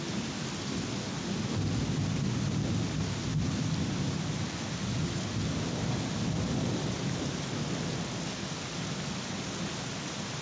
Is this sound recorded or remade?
recorded